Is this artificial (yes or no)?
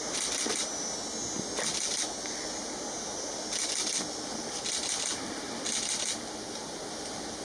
no